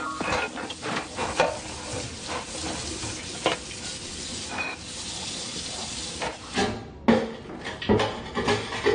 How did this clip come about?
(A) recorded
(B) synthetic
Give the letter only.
A